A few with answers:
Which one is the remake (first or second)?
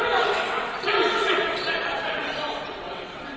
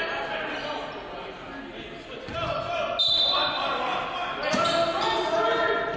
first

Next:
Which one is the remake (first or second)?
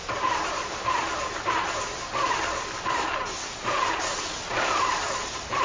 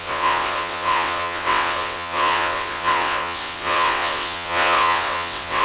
second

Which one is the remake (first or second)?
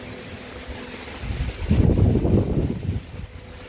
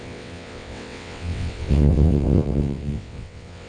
second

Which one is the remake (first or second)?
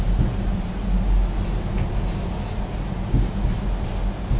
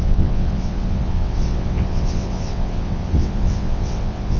second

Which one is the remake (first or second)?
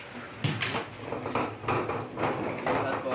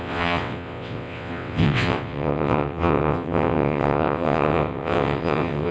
second